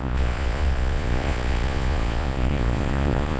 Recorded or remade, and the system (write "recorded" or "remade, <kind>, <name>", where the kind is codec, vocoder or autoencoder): remade, vocoder, Vocos